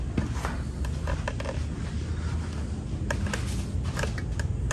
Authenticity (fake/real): real